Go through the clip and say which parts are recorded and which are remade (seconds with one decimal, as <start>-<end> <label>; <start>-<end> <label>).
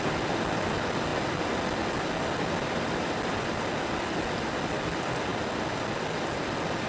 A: 0.0-6.9 recorded